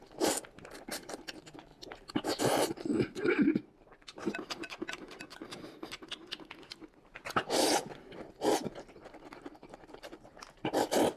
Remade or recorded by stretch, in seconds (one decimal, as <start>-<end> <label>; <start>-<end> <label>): 0.0-11.2 recorded